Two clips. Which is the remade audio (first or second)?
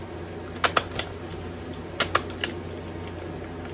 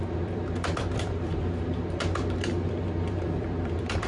second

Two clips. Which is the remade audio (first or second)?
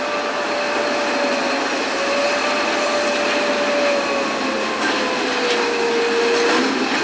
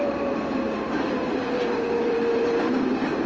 second